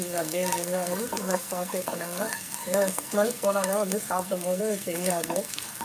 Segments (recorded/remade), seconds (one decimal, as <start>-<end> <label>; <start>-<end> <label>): 0.0-5.8 remade